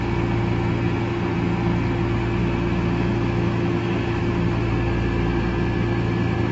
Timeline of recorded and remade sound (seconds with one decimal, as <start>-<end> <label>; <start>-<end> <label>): 0.0-2.4 recorded; 2.4-4.7 remade; 4.7-6.5 recorded